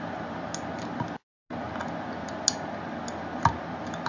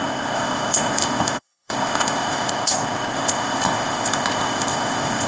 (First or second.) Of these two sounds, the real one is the first